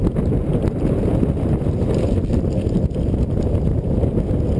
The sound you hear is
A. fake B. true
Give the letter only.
B